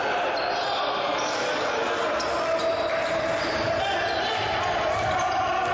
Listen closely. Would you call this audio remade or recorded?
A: recorded